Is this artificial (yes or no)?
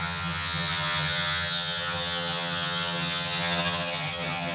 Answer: yes